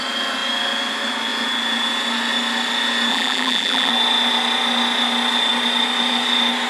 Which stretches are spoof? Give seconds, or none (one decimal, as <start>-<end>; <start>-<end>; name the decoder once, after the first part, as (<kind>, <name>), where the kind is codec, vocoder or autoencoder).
3.1-3.9 (vocoder, BigVGAN v2)